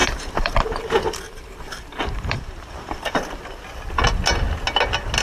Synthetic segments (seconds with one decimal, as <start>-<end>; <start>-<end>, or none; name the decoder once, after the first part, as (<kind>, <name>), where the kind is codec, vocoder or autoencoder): 0.0-3.1 (vocoder, BigVGAN v2)